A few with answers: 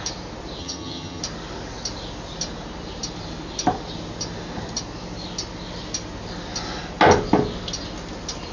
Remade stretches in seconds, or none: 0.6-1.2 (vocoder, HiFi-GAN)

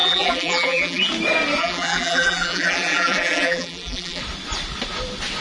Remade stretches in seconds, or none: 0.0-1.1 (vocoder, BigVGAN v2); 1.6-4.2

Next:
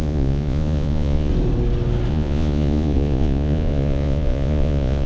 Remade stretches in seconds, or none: 0.0-1.3 (vocoder, Vocos); 2.1-5.1

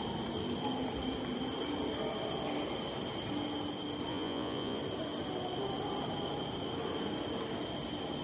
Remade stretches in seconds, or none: 4.1-4.8 (vocoder, Vocos)

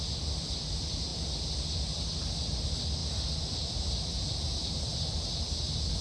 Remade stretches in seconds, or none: 3.0-5.3 (vocoder, BigVGAN v2)

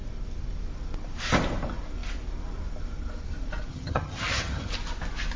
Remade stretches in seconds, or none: 3.7-4.7 (vocoder, HiFi-GAN)

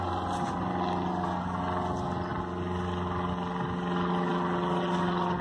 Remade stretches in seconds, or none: none